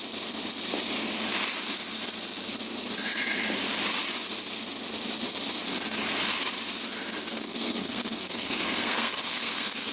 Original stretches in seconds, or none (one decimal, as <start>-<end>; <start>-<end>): 0.0-7.3